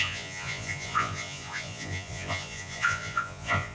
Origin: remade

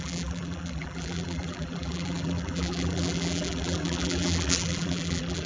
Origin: remade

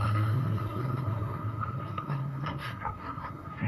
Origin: remade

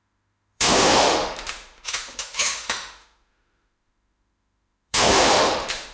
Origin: remade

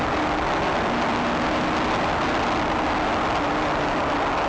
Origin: recorded